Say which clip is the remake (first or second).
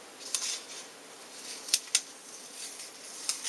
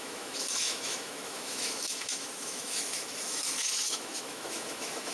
second